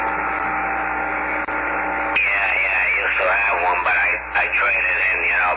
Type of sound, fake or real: real